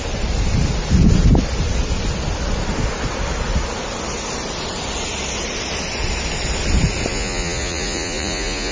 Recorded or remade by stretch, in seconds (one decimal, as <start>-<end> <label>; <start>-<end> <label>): 0.0-7.1 recorded; 7.1-8.7 remade